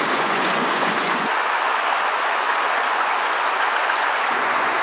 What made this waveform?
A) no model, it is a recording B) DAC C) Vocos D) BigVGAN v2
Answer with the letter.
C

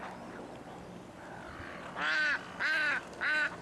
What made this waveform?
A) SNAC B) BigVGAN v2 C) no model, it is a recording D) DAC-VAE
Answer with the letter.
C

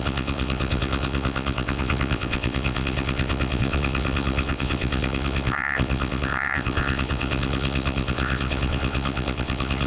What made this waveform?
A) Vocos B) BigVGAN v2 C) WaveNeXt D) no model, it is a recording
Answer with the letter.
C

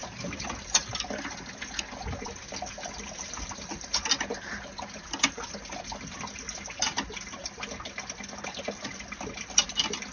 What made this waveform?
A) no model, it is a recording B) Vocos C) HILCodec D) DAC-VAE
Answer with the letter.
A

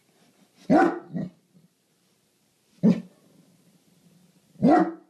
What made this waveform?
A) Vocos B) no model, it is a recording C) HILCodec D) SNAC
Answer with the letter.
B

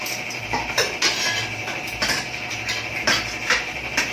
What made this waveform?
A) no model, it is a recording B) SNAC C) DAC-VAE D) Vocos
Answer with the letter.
A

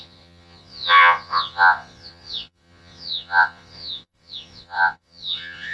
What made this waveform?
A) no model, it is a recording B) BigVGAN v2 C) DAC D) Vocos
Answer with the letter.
D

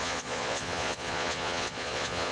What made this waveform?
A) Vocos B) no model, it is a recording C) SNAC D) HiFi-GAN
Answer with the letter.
A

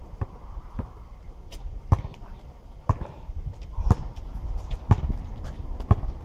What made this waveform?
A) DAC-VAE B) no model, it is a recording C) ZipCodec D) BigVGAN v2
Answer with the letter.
D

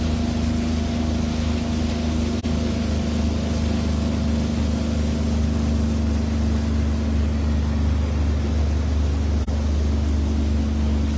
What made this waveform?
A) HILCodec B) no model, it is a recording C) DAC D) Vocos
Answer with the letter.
B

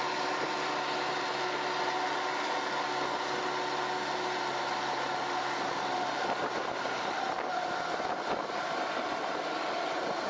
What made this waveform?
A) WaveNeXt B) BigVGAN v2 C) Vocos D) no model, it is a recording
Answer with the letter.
D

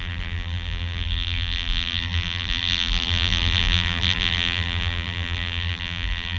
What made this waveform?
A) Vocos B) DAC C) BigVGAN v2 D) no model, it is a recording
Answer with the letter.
C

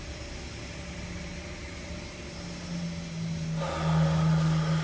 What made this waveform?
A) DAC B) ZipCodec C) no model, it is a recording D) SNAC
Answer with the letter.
C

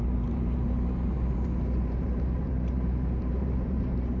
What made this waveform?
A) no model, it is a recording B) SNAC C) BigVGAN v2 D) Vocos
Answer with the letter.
C